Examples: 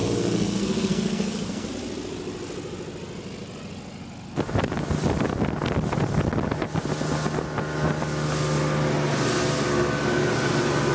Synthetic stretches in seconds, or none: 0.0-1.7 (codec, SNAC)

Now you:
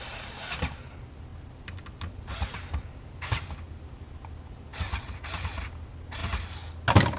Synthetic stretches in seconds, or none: none

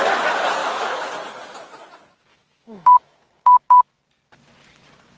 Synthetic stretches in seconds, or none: 0.6-1.1 (autoencoder, DAC-VAE); 2.3-4.0

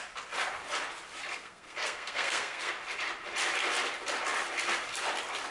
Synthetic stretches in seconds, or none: 1.3-2.7 (codec, SNAC)

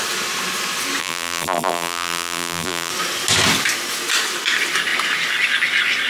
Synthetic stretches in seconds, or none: 1.0-2.9 (vocoder, BigVGAN v2)

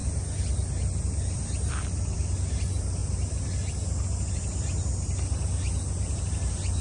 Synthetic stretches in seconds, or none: none